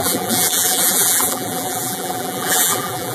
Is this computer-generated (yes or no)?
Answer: yes